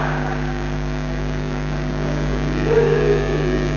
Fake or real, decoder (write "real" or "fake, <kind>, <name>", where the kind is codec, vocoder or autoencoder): fake, codec, DAC